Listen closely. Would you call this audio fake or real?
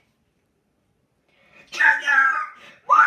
fake